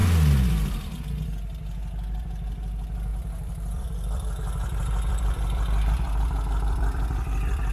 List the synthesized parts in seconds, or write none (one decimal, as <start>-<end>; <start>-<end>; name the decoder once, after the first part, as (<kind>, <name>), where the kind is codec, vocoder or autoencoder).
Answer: 3.1-7.7 (vocoder, BigVGAN v2)